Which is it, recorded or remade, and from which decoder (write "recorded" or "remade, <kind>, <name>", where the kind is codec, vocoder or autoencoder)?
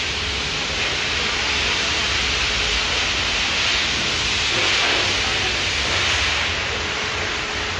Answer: recorded